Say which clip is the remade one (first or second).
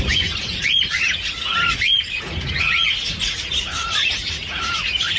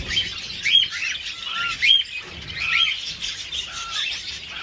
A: first